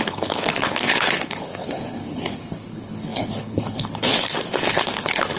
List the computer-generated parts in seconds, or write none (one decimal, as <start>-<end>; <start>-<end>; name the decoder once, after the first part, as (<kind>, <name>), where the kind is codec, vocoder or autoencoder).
0.0-5.4 (codec, HILCodec)